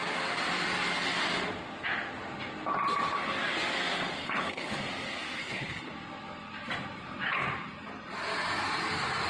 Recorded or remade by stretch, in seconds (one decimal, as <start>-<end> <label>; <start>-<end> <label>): 0.0-4.2 recorded; 4.2-4.7 remade; 4.7-5.4 recorded; 5.4-5.9 remade; 5.9-9.3 recorded